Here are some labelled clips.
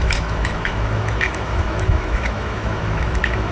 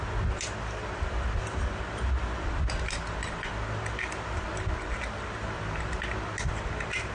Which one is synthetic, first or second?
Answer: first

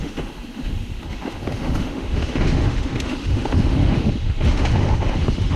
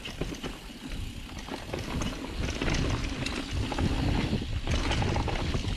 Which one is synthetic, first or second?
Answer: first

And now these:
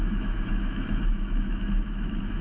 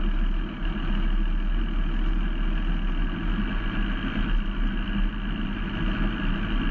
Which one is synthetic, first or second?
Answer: first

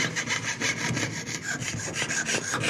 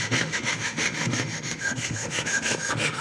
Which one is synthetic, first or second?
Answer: second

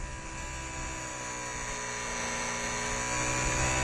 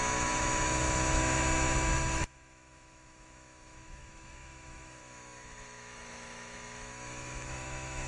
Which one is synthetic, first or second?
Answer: second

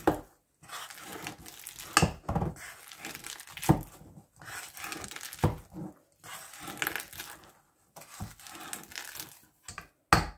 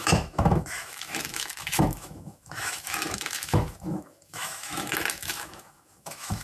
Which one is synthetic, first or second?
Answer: second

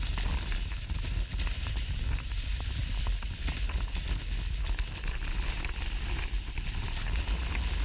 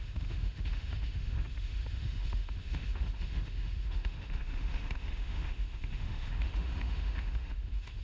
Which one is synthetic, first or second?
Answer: second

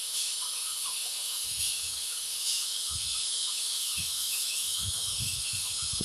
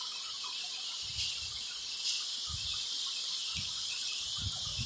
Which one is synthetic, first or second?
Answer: first